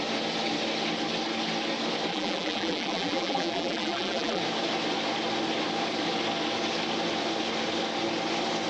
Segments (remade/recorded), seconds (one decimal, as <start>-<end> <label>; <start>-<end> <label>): 0.0-2.1 recorded; 2.1-4.4 remade; 4.4-8.7 recorded